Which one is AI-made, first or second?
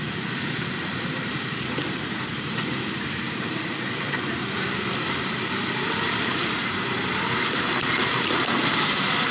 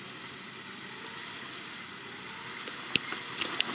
first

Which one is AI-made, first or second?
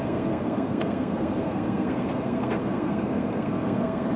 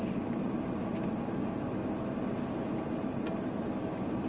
first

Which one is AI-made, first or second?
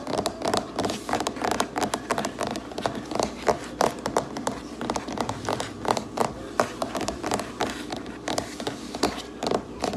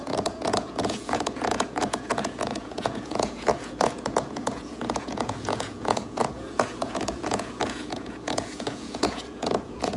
second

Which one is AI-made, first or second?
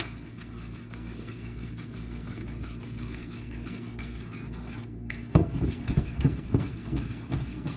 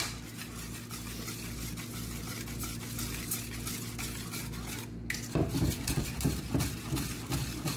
first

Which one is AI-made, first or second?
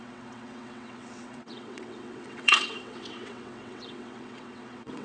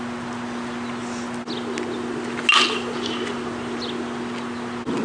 first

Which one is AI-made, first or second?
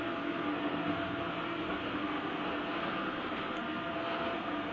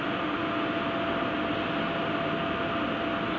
first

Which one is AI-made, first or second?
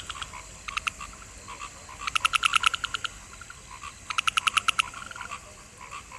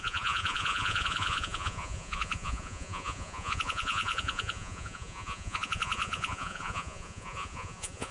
second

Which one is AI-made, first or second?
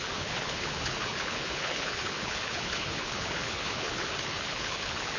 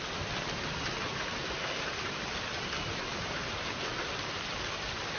first